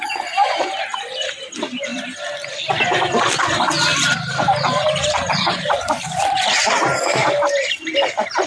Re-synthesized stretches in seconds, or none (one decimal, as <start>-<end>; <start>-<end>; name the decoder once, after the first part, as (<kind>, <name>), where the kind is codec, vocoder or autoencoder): 3.9-6.2 (vocoder, BigVGAN v2)